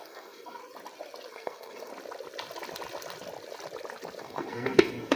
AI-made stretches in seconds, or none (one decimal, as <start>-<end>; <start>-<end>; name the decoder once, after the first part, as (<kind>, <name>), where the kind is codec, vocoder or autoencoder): 0.0-0.6 (codec, SNAC); 1.3-1.9; 4.2-5.2